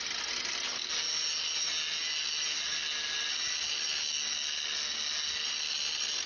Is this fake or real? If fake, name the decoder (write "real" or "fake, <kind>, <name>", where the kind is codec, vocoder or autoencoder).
real